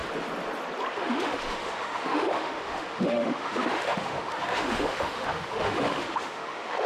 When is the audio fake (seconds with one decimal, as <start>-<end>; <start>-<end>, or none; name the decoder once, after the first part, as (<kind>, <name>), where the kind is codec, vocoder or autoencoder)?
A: 0.9-6.9 (autoencoder, DAC-VAE)